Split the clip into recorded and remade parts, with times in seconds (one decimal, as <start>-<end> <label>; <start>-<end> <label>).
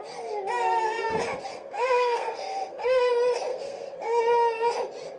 0.0-1.5 recorded; 1.5-3.1 remade; 3.1-3.5 recorded; 3.5-4.2 remade; 4.2-5.2 recorded